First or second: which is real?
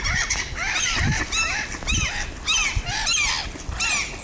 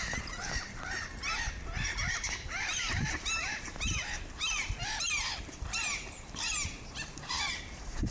first